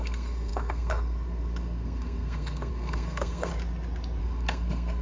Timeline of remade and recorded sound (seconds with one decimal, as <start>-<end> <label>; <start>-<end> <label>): 0.0-3.5 remade; 3.5-4.2 recorded; 4.2-5.0 remade